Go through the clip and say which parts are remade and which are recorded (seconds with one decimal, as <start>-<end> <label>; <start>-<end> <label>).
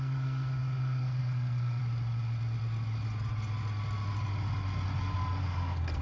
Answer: 0.0-1.8 remade; 1.8-5.4 recorded; 5.4-6.0 remade